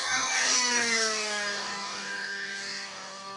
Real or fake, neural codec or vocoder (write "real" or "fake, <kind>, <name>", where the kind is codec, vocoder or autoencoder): fake, codec, DAC